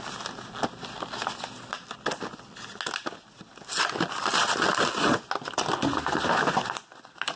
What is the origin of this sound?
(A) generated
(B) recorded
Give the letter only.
B